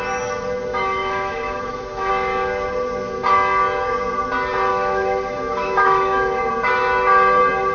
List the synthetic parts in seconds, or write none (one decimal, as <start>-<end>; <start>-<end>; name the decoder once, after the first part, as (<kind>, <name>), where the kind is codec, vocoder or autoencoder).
0.7-2.1 (autoencoder, DAC-VAE); 4.7-6.5